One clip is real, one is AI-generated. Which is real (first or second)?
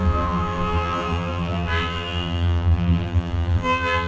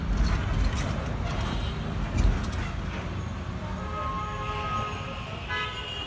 second